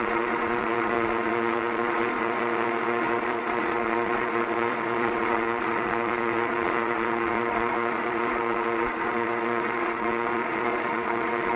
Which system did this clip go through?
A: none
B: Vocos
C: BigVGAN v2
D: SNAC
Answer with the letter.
B